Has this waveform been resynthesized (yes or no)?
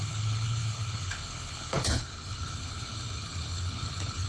yes